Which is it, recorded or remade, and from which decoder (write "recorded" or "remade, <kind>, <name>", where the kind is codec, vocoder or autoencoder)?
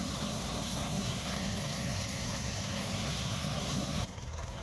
remade, codec, SNAC